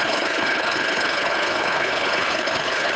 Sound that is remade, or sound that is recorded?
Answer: remade